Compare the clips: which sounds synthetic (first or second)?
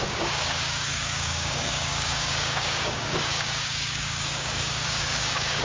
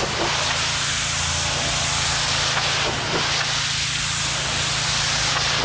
first